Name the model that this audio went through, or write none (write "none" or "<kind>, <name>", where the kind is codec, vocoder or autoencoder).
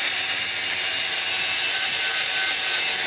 none